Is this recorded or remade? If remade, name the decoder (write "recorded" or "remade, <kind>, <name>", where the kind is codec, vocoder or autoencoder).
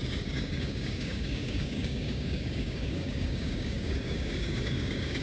remade, codec, DAC